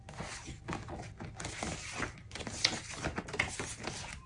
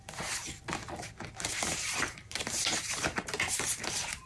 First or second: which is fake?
second